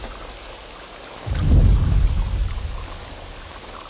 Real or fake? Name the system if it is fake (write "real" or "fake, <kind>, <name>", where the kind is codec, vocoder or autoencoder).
real